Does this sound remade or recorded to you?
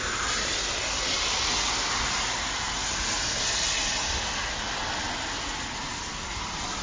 recorded